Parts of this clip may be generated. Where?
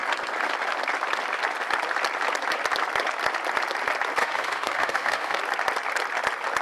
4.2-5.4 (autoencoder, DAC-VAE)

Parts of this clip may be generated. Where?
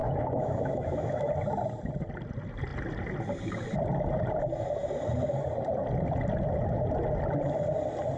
0.0-1.3 (autoencoder, DAC-VAE)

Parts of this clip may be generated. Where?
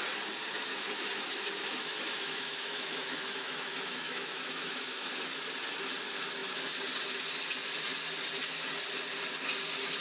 0.7-5.1 (autoencoder, DAC-VAE)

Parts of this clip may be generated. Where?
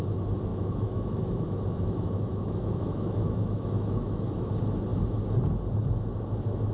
0.5-4.5 (autoencoder, DAC-VAE)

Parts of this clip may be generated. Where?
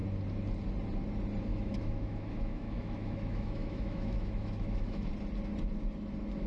1.5-5.1 (autoencoder, DAC-VAE)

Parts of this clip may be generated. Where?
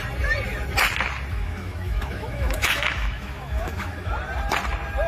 1.3-4.1 (autoencoder, DAC-VAE)